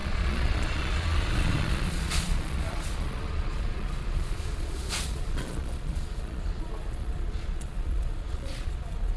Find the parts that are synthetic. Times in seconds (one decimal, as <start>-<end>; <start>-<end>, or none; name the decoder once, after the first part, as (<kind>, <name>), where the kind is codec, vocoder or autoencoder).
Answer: 0.0-9.2 (vocoder, Vocos)